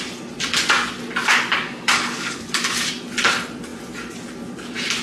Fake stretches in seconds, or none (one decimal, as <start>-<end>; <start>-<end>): 1.2-2.9